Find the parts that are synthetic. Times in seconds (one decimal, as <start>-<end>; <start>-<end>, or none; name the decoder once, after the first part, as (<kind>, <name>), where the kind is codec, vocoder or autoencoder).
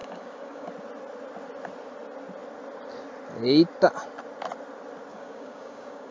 0.0-0.7 (codec, DAC); 5.1-6.1